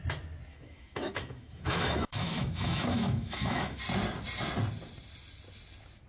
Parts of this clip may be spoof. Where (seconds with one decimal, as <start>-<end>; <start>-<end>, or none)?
0.5-3.8